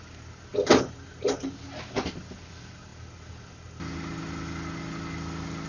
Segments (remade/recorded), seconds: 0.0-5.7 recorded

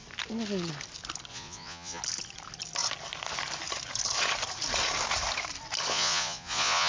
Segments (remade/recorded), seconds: 0.0-1.3 recorded; 1.3-2.0 remade; 2.0-5.9 recorded; 5.9-6.9 remade

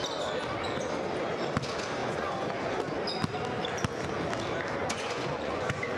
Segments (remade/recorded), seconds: 0.0-2.0 recorded; 2.0-2.7 remade; 2.7-4.8 recorded; 4.8-6.0 remade

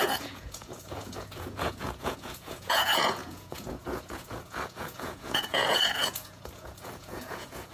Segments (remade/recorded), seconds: 0.0-7.7 remade

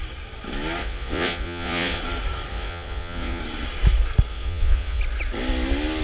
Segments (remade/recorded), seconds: 0.0-0.8 recorded; 0.8-2.0 remade; 2.0-2.5 recorded; 2.5-3.4 remade; 3.4-4.3 recorded; 4.3-5.0 remade; 5.0-6.0 recorded

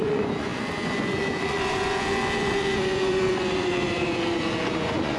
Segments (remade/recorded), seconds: 0.0-5.2 remade

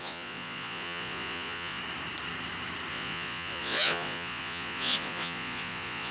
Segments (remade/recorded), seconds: 0.0-1.8 remade; 1.8-2.9 recorded; 2.9-6.1 remade